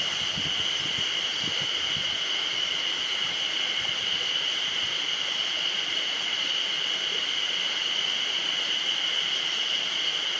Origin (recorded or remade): recorded